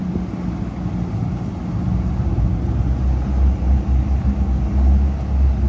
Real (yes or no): yes